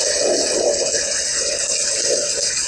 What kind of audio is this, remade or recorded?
recorded